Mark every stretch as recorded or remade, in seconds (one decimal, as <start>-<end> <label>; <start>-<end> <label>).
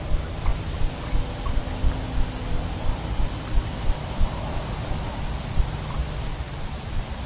0.0-6.3 recorded; 6.3-7.3 remade